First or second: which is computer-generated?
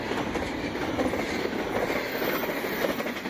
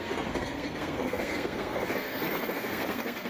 second